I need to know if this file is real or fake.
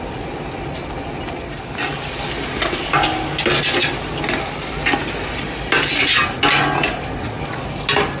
real